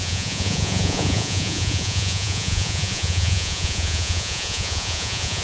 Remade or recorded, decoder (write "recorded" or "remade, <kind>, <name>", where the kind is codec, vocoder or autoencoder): remade, vocoder, Vocos